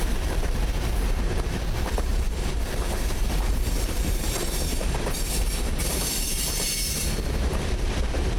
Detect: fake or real fake